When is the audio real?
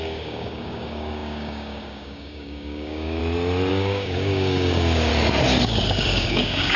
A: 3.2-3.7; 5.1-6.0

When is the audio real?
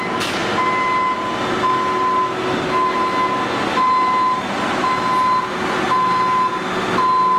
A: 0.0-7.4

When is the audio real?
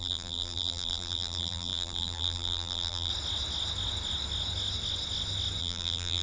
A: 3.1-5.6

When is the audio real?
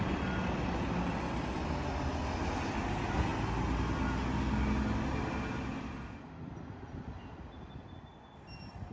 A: 0.0-8.9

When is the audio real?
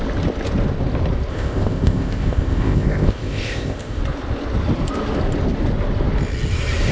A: 0.0-1.3; 4.0-6.9